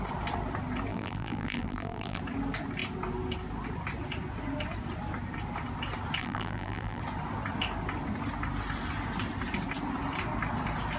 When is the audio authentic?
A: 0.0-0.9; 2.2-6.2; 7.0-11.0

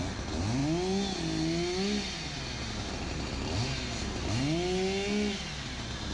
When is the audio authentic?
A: 0.0-6.1

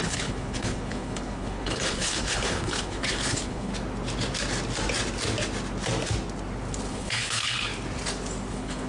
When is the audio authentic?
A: 3.7-6.9; 7.7-8.5

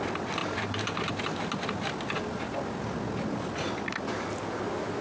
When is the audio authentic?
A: 0.0-0.4; 1.1-5.0

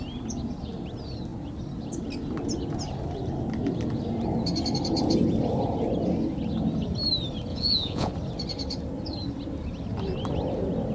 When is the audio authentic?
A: 0.0-7.5; 8.1-10.9

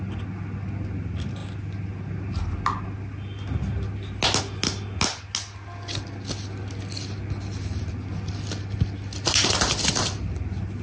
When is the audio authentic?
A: 0.0-10.8

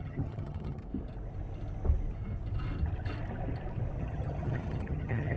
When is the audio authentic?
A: 0.8-4.0

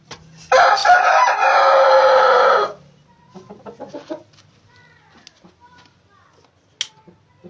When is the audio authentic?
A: 0.0-7.5